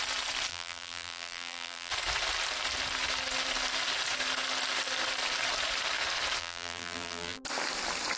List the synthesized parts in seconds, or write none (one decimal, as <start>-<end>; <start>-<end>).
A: 0.5-1.9; 6.4-7.4